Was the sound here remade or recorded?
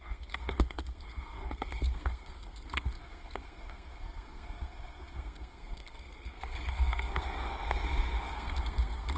remade